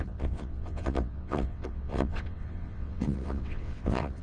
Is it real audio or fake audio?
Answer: fake